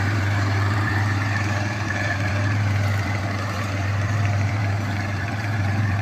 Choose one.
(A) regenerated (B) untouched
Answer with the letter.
A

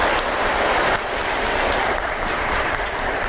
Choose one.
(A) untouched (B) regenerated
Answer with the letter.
B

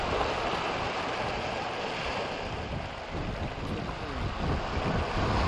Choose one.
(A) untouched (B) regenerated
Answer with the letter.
A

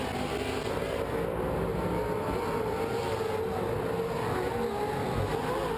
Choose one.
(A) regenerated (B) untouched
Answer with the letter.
B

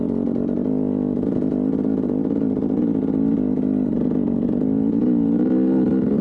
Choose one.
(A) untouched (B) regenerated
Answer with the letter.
A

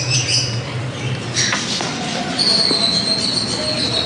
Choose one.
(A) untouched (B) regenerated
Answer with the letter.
A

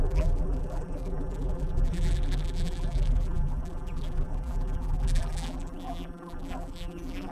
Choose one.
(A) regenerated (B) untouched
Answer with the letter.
A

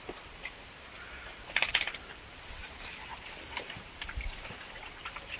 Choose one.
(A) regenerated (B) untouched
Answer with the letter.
A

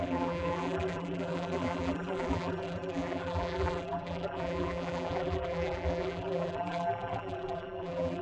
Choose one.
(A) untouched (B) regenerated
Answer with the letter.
B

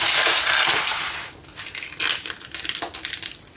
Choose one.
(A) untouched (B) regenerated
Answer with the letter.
A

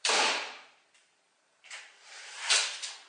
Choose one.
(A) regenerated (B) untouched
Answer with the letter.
A